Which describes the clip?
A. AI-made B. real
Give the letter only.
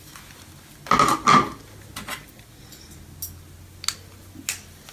B